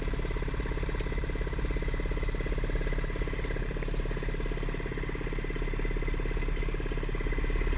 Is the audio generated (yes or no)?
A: no